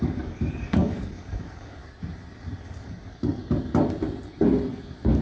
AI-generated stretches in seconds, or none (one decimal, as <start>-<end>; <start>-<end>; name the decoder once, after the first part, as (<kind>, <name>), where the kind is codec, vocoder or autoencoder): 0.0-1.8 (codec, DAC); 2.6-3.4; 4.7-5.2